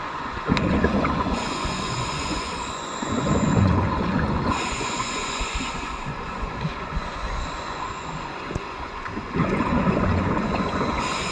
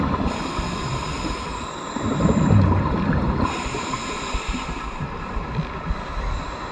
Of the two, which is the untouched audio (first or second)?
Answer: second